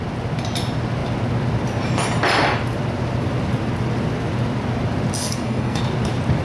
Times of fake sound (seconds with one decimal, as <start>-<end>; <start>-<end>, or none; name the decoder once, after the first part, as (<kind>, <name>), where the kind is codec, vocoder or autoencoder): 5.2-5.8 (codec, SNAC)